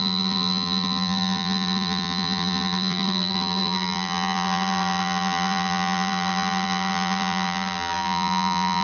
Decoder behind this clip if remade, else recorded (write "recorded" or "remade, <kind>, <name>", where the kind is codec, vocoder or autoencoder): remade, vocoder, BigVGAN v2